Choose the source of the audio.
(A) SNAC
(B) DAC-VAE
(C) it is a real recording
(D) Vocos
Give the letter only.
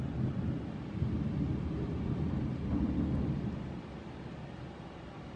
C